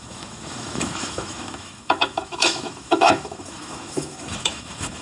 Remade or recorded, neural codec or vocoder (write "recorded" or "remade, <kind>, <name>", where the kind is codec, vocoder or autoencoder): remade, autoencoder, DAC-VAE